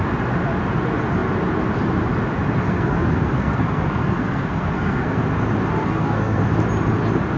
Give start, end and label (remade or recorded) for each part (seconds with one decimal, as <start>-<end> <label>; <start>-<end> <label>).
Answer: 0.0-2.6 recorded; 2.6-5.2 remade; 5.2-5.8 recorded; 5.8-6.4 remade; 6.4-7.4 recorded